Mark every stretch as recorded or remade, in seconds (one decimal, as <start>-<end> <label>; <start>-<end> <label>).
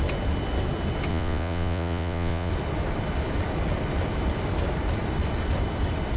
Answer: 0.0-1.1 recorded; 1.1-2.5 remade; 2.5-6.2 recorded